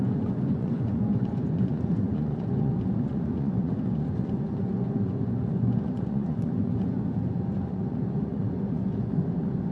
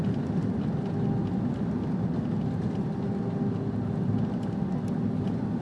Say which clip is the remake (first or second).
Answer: first